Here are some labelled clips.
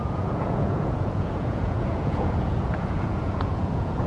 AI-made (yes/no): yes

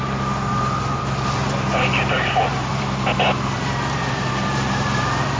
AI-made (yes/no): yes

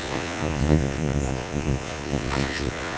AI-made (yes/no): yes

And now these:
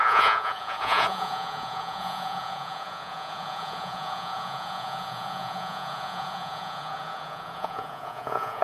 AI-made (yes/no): yes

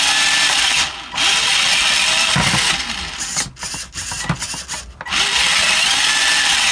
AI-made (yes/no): no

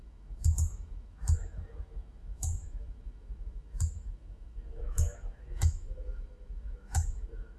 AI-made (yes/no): yes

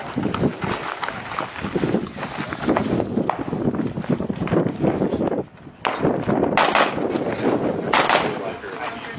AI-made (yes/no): no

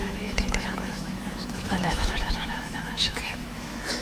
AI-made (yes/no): yes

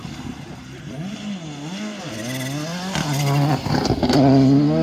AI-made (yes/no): no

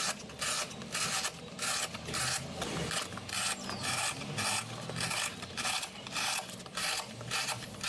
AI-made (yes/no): no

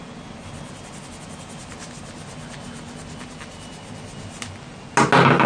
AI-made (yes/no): no